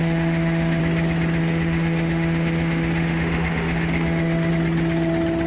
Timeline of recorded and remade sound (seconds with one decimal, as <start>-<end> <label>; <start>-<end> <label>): 0.0-0.8 remade; 0.8-1.4 recorded; 1.4-4.5 remade; 4.5-5.5 recorded